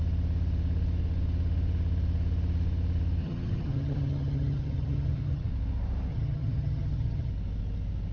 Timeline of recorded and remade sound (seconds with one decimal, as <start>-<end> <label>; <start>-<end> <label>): 0.0-3.2 recorded; 3.2-5.5 remade; 5.5-6.1 recorded; 6.1-7.3 remade; 7.3-8.1 recorded